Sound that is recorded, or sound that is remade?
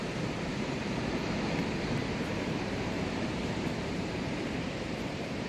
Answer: remade